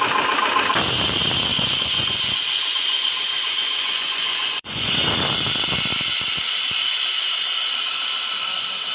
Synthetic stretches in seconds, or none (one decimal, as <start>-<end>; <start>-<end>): 1.5-5.1